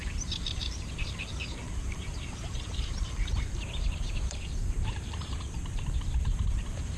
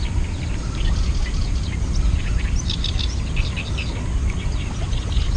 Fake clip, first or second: first